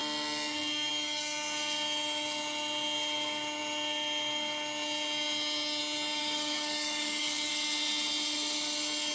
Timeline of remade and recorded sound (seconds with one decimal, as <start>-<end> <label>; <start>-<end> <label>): 0.0-6.2 recorded; 6.2-7.5 remade; 7.5-9.1 recorded